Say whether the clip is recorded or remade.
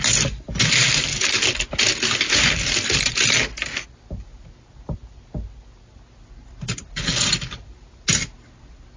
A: recorded